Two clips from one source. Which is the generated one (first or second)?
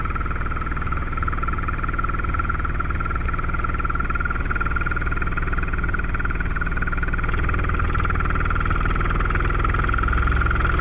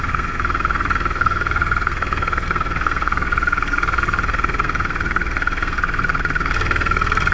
second